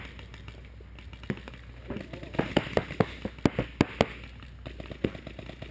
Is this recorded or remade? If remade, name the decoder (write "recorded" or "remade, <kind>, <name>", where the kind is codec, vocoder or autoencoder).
recorded